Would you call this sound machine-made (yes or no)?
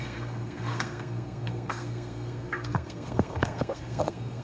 yes